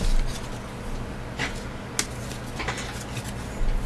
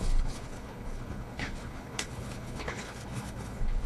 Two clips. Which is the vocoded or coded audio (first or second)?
second